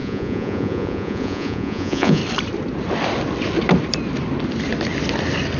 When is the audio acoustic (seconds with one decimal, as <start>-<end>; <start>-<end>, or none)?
2.2-5.6